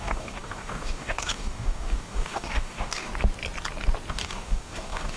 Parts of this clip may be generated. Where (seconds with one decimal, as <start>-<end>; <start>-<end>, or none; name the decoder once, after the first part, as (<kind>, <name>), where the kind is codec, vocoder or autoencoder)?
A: 0.0-3.1 (codec, DAC); 4.1-5.2